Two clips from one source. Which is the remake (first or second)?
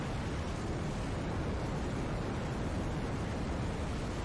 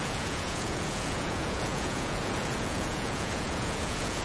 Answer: second